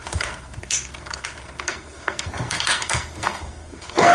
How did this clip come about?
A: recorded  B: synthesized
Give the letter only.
B